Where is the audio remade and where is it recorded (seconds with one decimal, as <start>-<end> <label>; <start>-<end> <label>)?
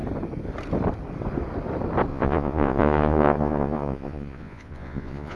0.0-2.1 recorded; 2.1-5.4 remade